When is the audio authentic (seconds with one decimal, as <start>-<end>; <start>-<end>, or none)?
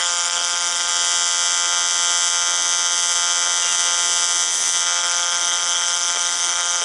0.9-5.0